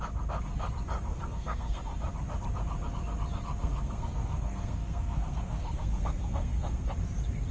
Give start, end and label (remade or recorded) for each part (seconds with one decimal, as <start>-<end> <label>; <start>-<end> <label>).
0.0-1.1 recorded; 1.1-1.8 remade; 1.8-3.6 recorded; 3.6-6.9 remade; 6.9-7.5 recorded